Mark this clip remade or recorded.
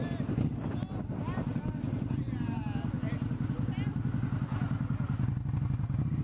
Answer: recorded